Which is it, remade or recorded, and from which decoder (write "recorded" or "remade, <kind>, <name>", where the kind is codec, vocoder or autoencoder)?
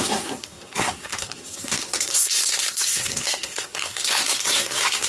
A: remade, codec, SNAC